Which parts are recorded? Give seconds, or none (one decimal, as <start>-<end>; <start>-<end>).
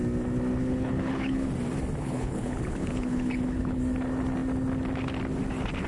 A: 0.0-0.6; 1.5-2.0; 3.8-5.9